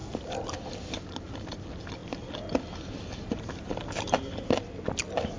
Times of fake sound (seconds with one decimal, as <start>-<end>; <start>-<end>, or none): none